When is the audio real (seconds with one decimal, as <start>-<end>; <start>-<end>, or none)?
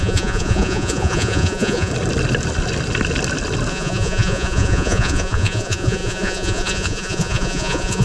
1.9-3.7